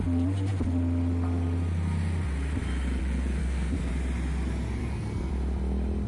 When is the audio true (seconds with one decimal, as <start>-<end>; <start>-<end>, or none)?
0.0-3.4; 3.9-4.8; 5.3-6.1